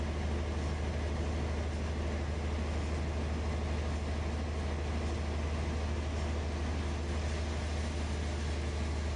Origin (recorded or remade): recorded